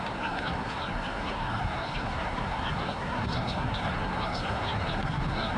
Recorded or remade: remade